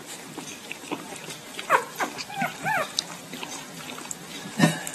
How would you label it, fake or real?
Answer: fake